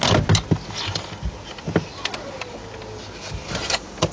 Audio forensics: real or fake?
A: real